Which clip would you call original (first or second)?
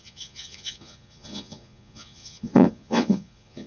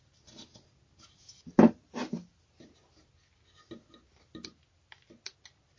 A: second